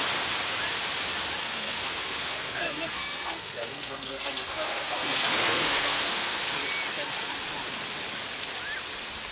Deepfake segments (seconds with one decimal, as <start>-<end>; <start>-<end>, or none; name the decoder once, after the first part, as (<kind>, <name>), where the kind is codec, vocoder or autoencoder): 1.4-6.4 (codec, SNAC)